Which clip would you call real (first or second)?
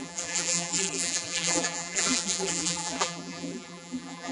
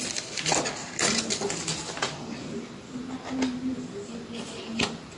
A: second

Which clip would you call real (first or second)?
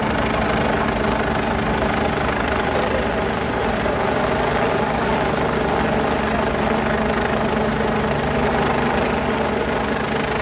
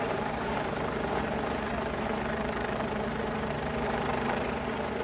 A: first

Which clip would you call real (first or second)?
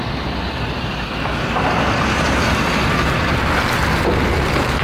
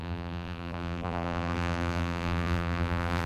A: first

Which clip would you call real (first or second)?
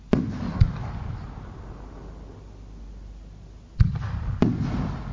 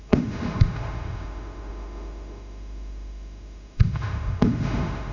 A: first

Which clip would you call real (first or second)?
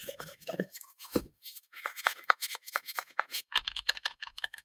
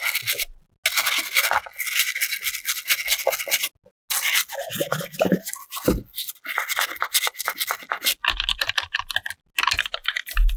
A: second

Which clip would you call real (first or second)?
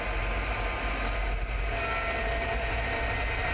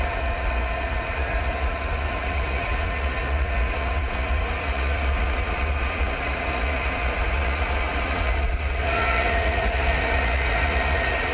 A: first